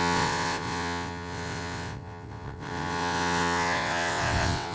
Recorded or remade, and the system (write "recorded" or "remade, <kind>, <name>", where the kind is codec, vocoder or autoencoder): remade, vocoder, WaveNeXt